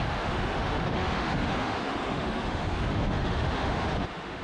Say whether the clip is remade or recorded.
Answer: remade